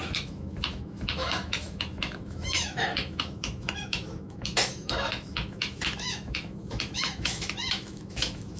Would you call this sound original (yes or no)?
no